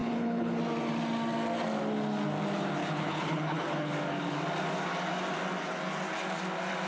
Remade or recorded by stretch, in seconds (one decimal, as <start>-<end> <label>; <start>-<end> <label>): 0.0-0.6 remade; 0.6-2.8 recorded; 2.8-3.9 remade; 3.9-6.9 recorded